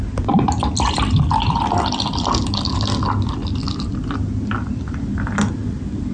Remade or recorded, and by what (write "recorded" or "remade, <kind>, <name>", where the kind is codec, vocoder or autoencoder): recorded